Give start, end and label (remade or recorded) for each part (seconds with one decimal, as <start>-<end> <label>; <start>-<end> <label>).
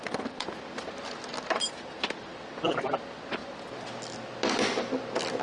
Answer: 0.0-5.4 recorded